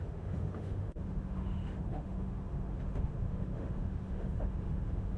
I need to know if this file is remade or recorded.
remade